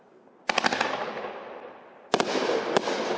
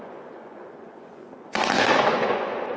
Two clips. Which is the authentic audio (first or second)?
first